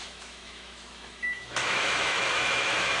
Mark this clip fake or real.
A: fake